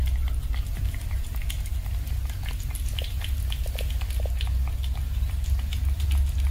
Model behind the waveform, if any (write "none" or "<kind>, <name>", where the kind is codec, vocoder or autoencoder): none